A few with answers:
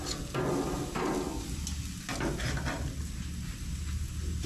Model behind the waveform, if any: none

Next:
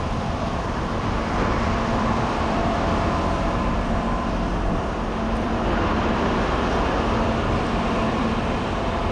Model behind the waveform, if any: vocoder, BigVGAN v2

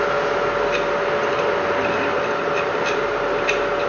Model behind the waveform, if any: none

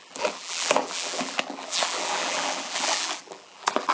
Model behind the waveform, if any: vocoder, BigVGAN v2